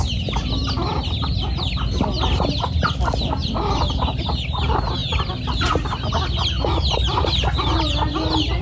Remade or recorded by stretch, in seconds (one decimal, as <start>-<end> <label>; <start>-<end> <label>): 0.0-8.6 recorded